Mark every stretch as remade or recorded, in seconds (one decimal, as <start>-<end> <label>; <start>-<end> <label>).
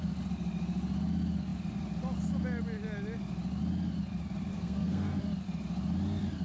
0.0-4.5 recorded; 4.5-5.2 remade; 5.2-6.4 recorded